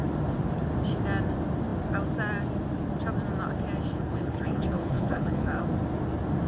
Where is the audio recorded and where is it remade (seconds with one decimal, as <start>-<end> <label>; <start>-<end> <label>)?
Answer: 0.0-3.9 recorded; 3.9-5.6 remade; 5.6-6.5 recorded